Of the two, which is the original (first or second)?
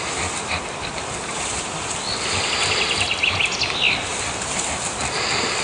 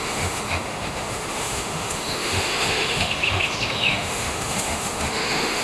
first